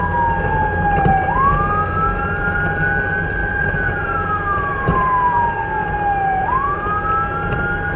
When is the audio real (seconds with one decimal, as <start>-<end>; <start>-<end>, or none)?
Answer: 0.0-3.4; 5.6-6.3; 6.9-8.0